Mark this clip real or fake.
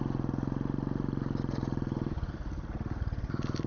fake